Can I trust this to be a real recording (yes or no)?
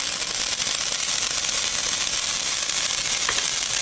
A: yes